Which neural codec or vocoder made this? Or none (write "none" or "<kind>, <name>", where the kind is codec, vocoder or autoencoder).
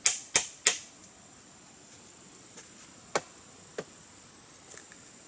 none